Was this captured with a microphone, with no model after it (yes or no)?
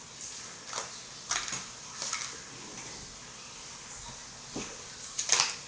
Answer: yes